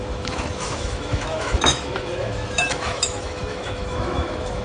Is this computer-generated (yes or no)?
yes